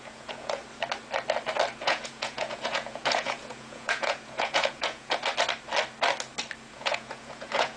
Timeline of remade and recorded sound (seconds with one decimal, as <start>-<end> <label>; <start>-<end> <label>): 0.0-0.6 remade; 0.6-1.8 recorded; 1.8-5.2 remade; 5.2-6.7 recorded; 6.7-7.8 remade